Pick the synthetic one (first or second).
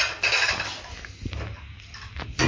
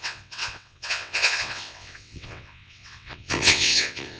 second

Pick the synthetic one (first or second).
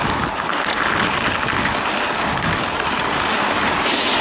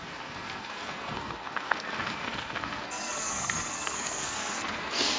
second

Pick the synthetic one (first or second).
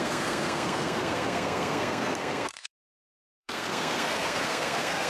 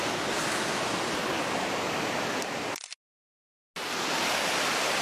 first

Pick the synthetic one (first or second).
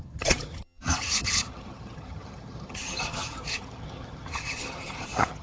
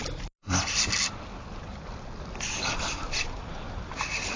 first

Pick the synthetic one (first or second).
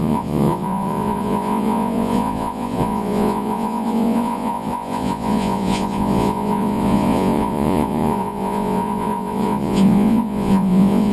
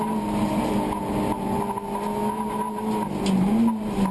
first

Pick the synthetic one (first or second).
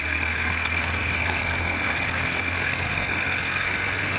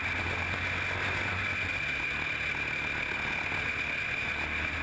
first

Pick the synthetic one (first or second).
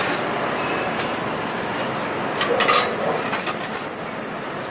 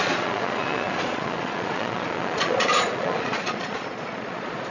second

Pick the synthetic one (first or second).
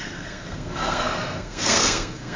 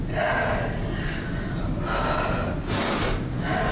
first